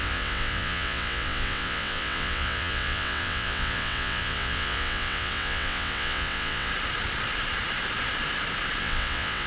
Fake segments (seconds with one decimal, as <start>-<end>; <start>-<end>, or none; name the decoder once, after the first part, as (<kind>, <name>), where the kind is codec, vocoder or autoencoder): 0.0-6.7 (vocoder, WaveNeXt); 8.8-9.5